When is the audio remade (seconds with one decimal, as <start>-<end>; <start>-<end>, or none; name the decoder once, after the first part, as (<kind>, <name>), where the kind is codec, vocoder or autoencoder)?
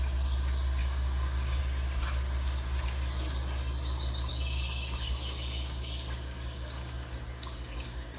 0.8-1.6 (codec, DAC); 4.3-8.2